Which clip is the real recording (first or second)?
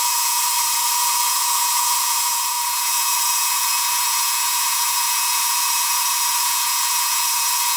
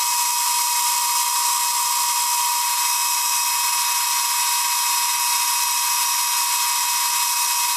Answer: second